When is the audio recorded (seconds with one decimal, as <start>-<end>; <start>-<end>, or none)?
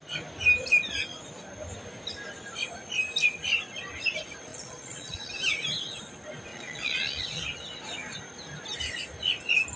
0.0-4.5; 5.3-6.5; 7.4-9.8